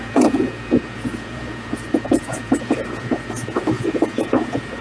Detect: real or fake fake